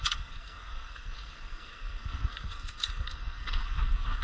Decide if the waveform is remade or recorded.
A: remade